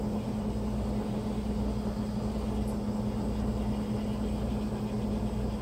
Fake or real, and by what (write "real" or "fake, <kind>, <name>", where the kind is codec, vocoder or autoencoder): real